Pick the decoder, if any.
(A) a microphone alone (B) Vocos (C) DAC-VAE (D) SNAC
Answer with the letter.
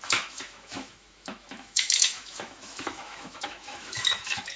C